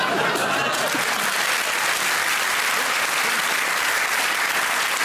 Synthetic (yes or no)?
no